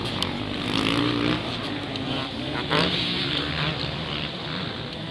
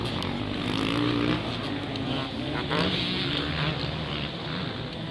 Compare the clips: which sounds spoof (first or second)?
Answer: first